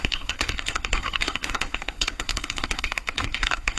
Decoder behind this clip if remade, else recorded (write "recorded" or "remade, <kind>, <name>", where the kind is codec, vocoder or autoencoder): remade, codec, SNAC